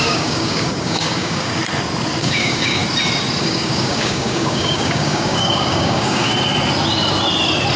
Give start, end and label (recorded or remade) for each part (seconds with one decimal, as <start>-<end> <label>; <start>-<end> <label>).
0.0-1.6 remade; 1.6-2.2 recorded; 2.2-2.8 remade; 2.8-3.4 recorded; 3.4-6.3 remade; 6.3-7.8 recorded

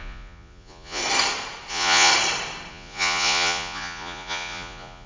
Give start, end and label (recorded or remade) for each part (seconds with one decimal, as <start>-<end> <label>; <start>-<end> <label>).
0.0-1.0 remade; 1.0-1.7 recorded; 1.7-2.1 remade; 2.1-2.7 recorded; 2.7-5.1 remade

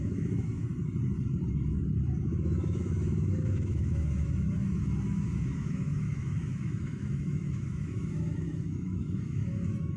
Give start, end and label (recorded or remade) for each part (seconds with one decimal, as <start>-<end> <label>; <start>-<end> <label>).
0.0-0.7 remade; 0.7-2.2 recorded; 2.2-10.0 remade

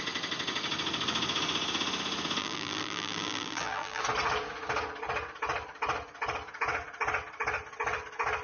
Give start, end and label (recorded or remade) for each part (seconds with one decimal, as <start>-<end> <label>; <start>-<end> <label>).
0.0-2.4 recorded; 2.4-4.0 remade; 4.0-8.4 recorded

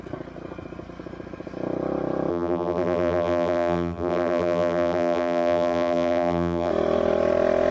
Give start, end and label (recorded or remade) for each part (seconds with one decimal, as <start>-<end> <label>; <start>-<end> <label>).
0.0-2.3 recorded; 2.3-6.7 remade; 6.7-7.7 recorded

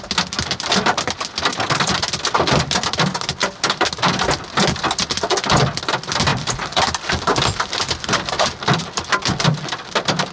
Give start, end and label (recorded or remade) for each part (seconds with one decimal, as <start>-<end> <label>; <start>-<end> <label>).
0.0-1.5 recorded; 1.5-2.0 remade; 2.0-3.4 recorded; 3.4-4.2 remade; 4.2-6.3 recorded; 6.3-8.8 remade; 8.8-10.3 recorded

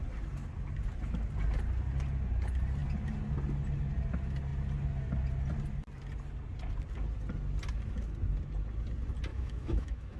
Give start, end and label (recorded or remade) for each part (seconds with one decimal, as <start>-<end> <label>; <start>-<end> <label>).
0.0-9.3 recorded; 9.3-10.2 remade